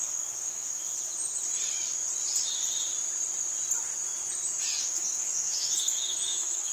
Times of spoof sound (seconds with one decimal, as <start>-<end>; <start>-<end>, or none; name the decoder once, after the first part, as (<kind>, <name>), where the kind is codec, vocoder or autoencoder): 0.0-0.9 (autoencoder, DAC-VAE); 4.8-6.7